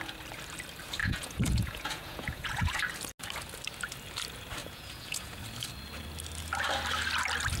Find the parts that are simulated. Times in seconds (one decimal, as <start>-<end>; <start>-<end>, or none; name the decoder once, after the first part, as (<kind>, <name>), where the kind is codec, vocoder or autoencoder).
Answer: 1.0-2.8 (vocoder, Vocos); 4.6-5.4